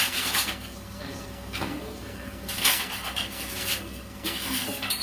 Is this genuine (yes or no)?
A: no